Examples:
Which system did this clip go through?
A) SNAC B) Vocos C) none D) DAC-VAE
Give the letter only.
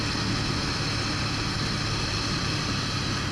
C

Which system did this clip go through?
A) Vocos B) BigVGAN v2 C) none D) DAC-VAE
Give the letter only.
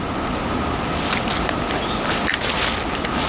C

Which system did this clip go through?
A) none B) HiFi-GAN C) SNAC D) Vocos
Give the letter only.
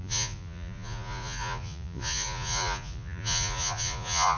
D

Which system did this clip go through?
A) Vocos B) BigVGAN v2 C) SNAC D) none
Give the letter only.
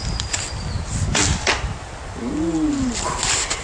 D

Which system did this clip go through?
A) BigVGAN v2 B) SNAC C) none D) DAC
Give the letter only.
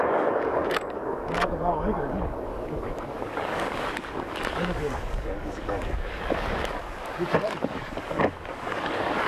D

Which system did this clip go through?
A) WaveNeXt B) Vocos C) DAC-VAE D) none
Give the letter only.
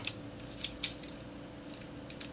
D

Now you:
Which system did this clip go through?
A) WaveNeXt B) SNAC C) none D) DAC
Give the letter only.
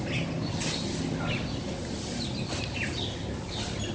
C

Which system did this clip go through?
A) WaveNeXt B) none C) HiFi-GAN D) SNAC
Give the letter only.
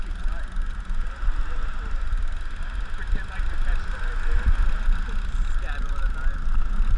B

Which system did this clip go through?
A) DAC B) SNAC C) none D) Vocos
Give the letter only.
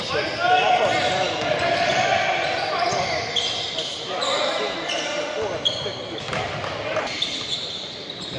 C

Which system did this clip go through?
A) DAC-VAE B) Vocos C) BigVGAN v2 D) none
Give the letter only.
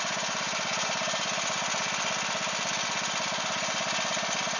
D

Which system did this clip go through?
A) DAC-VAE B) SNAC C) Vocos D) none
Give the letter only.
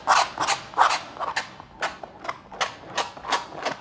D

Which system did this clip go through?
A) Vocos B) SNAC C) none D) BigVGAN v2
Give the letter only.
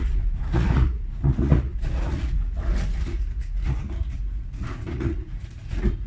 A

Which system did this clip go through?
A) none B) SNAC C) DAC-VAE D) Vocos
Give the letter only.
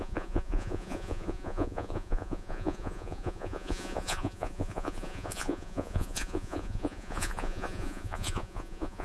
D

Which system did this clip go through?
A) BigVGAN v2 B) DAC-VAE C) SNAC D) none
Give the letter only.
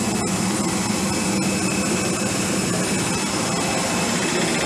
D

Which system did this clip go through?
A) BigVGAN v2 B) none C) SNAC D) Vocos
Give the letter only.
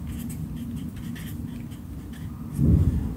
B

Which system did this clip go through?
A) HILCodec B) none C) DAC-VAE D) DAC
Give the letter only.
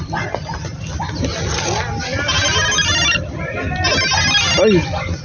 B